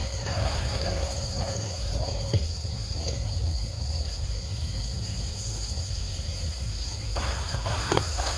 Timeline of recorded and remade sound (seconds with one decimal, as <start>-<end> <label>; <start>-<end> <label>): 0.0-8.4 remade

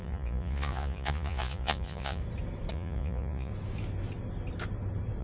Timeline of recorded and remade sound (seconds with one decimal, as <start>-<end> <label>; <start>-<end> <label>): 0.0-2.2 remade; 2.2-2.7 recorded; 2.7-3.5 remade; 3.5-5.2 recorded

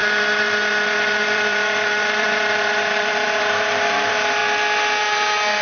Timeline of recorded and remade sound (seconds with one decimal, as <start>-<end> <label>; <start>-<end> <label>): 0.0-4.4 remade; 4.4-5.0 recorded; 5.0-5.6 remade